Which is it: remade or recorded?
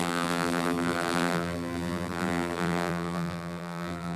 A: remade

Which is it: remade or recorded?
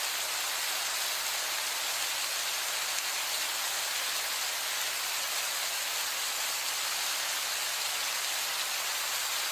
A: recorded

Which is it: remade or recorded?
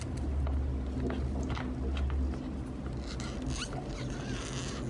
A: recorded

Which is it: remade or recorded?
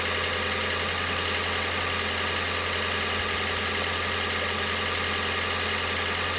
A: recorded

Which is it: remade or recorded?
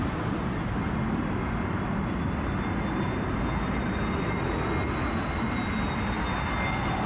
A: recorded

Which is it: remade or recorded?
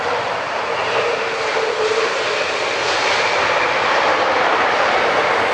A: remade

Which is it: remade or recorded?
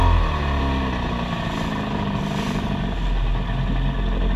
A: recorded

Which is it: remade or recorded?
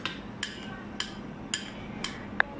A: recorded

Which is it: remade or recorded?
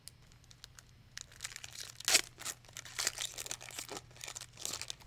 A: recorded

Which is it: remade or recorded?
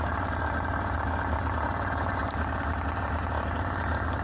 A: recorded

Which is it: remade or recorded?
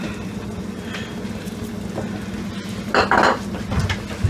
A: recorded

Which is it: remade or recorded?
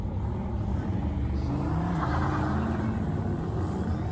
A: recorded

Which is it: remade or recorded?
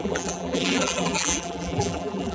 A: remade